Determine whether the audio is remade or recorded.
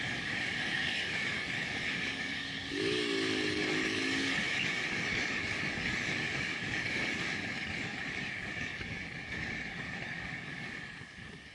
remade